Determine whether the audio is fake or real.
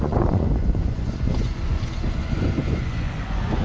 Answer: fake